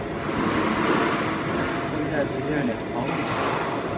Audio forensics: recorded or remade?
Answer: recorded